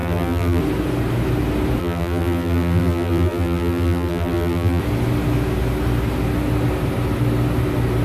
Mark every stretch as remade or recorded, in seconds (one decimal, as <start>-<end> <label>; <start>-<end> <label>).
0.0-0.6 remade; 0.6-1.8 recorded; 1.8-4.8 remade; 4.8-8.0 recorded